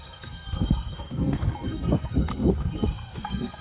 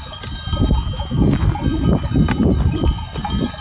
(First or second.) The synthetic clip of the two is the first